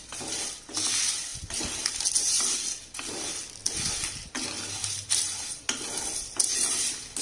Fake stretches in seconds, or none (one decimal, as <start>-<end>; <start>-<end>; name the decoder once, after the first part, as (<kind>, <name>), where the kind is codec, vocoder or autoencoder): none